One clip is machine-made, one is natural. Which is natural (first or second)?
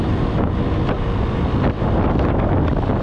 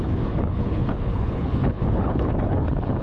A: first